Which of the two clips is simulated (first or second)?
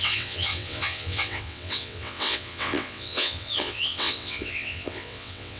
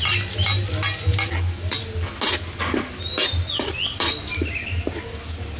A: first